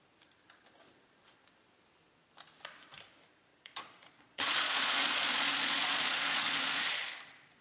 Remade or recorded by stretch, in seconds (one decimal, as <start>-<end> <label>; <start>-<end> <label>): 0.0-3.5 recorded; 3.5-7.1 remade; 7.1-7.6 recorded